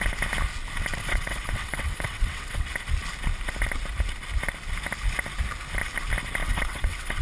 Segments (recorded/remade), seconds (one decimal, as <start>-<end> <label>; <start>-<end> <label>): 0.0-1.0 recorded; 1.0-2.7 remade; 2.7-6.4 recorded; 6.4-7.2 remade